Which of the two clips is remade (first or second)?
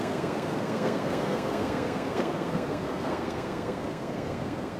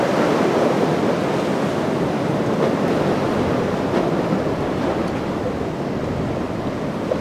first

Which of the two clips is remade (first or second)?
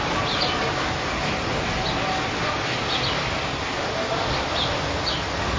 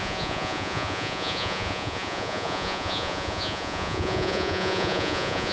second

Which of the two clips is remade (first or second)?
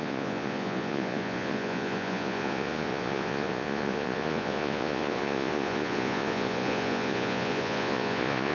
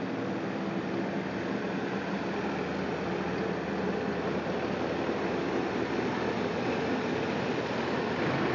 first